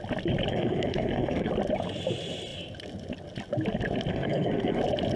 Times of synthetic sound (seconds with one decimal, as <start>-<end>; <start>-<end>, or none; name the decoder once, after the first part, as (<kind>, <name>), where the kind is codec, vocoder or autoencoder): 0.5-1.5 (codec, SNAC); 4.1-4.8